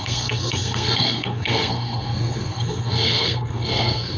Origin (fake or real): fake